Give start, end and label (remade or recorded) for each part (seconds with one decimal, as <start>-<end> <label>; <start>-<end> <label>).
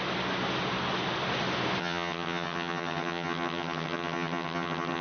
0.0-1.8 recorded; 1.8-5.0 remade